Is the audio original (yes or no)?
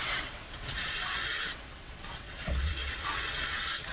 no